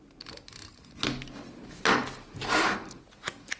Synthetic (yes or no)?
no